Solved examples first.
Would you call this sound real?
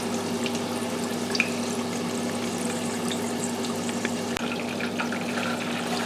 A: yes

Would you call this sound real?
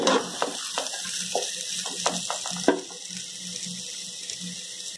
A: yes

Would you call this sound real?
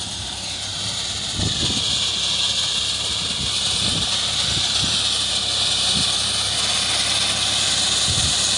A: yes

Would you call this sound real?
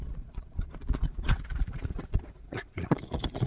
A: no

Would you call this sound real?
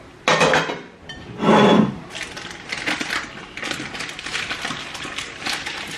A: yes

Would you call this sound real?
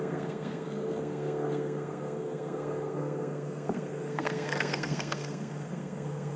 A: no